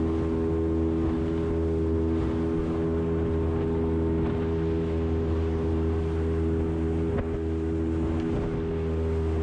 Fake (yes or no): no